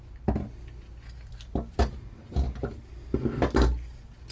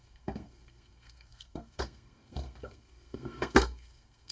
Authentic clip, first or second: first